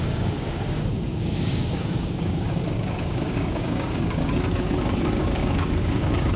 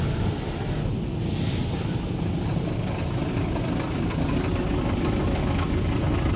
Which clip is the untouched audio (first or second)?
second